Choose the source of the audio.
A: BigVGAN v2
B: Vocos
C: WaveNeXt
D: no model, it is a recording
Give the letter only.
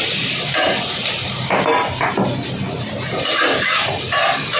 D